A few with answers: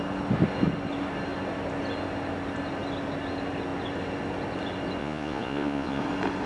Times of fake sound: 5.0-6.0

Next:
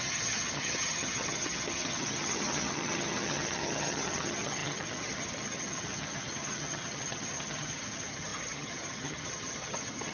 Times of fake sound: 0.0-10.1

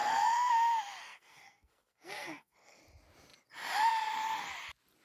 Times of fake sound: 0.0-0.5; 1.0-2.8

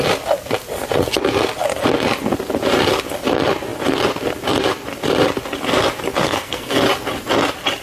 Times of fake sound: 6.2-6.8

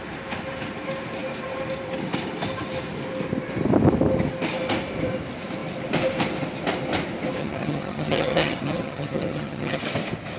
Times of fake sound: 7.4-9.8